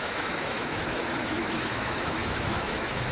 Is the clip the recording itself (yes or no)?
no